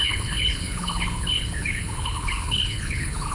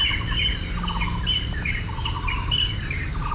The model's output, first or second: first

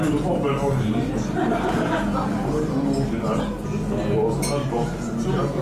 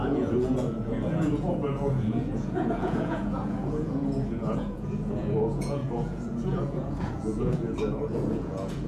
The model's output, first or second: second